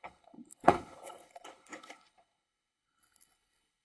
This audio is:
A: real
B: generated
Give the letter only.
B